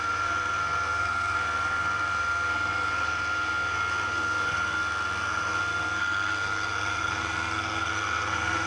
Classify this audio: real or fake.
fake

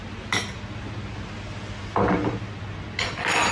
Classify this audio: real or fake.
real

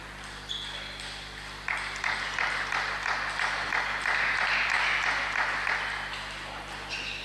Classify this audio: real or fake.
real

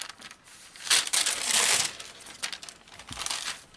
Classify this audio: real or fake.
real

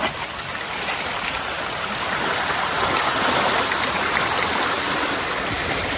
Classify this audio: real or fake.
real